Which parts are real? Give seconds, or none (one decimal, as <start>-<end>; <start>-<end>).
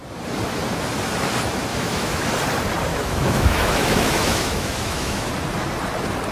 0.0-1.7; 2.3-2.9; 5.3-6.3